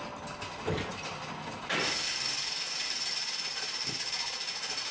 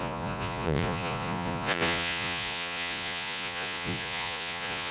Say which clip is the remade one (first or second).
second